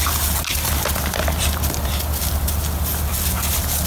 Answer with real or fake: real